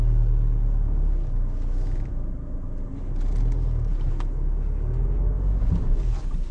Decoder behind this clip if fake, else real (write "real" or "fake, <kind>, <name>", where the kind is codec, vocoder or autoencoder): real